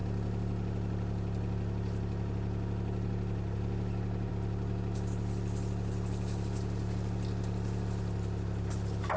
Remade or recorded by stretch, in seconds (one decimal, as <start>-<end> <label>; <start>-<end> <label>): 0.0-9.2 recorded